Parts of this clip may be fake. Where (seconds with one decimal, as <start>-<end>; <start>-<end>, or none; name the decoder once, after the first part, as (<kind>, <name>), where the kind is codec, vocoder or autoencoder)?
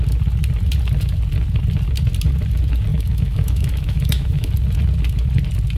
2.9-4.5 (autoencoder, DAC-VAE)